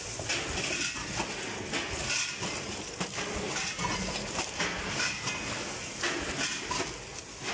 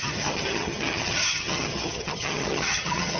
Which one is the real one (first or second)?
first